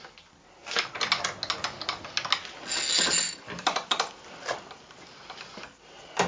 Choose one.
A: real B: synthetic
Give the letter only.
A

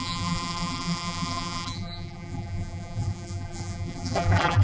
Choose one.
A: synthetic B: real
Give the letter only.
A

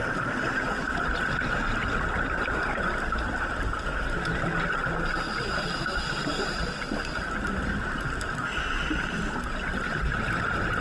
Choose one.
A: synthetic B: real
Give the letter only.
B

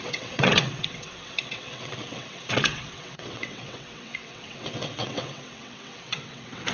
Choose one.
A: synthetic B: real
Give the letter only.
A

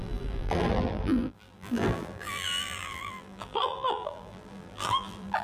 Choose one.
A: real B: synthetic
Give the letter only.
B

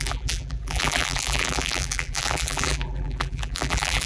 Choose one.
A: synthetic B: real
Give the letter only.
A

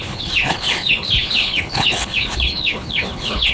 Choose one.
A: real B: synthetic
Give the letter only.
B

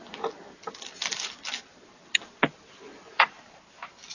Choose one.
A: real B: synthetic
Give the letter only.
A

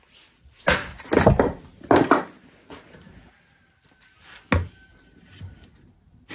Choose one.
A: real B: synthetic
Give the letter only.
A